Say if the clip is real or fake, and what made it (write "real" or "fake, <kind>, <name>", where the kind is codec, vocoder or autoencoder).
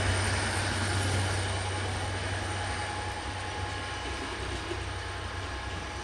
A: real